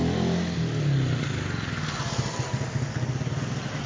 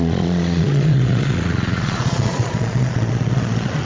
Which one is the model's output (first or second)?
second